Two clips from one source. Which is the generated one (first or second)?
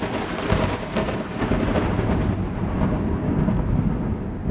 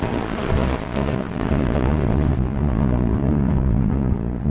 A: second